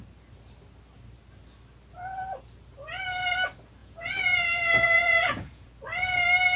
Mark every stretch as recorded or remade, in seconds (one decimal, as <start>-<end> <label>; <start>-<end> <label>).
0.0-3.8 recorded; 3.8-5.7 remade; 5.7-6.6 recorded